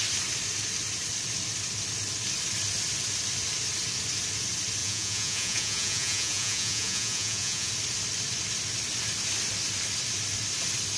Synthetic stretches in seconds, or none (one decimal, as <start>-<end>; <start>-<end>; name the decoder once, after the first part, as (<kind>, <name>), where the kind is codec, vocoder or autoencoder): 4.8-7.7 (vocoder, Vocos)